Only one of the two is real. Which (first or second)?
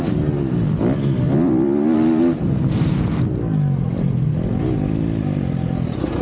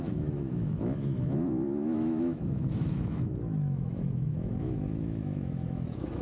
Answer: first